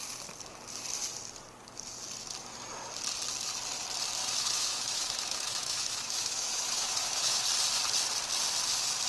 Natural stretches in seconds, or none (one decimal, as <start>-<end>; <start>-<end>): 0.0-4.2; 7.4-9.1